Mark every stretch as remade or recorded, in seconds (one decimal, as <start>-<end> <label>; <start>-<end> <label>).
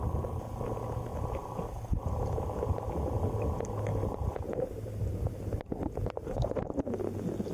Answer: 0.0-3.9 recorded; 3.9-6.8 remade; 6.8-7.5 recorded